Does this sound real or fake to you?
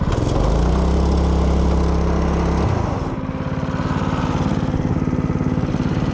real